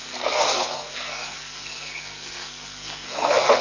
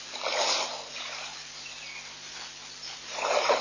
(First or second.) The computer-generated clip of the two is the first